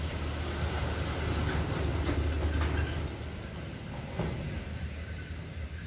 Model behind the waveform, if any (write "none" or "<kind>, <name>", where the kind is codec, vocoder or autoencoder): none